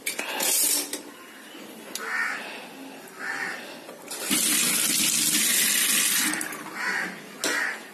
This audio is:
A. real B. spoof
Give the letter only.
A